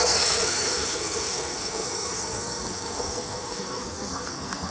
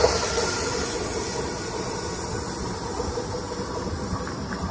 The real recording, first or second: second